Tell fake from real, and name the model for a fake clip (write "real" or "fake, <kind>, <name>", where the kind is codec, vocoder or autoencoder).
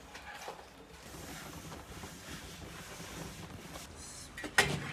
real